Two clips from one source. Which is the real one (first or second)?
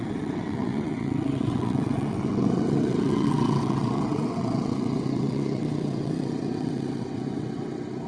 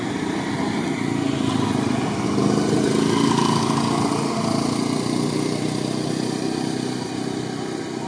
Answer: second